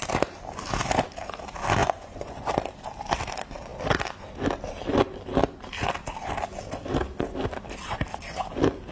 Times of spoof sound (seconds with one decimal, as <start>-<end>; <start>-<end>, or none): 1.8-2.5